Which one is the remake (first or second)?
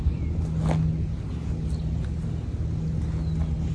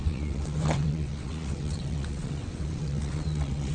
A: second